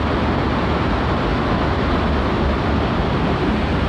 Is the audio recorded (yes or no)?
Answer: yes